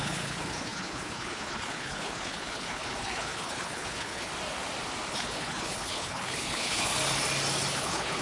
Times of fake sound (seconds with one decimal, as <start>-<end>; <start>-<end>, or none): 0.0-4.3; 5.1-6.9; 7.7-8.2